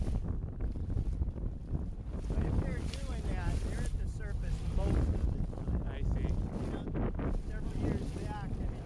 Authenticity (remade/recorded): recorded